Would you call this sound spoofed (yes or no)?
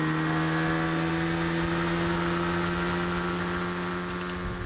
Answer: no